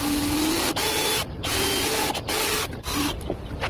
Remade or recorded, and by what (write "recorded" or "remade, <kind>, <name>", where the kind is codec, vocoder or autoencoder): recorded